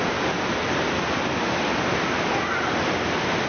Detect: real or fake real